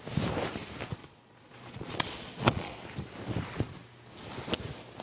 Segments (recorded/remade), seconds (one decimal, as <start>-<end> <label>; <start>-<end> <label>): 0.0-1.0 recorded; 1.0-2.7 remade; 2.7-5.0 recorded